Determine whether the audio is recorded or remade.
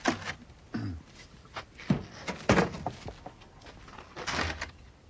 recorded